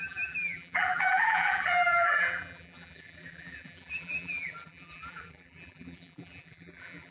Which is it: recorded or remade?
remade